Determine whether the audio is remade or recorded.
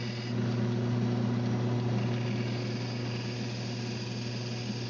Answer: recorded